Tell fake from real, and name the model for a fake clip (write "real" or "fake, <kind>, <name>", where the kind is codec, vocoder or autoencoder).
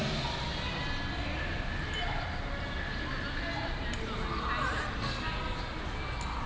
real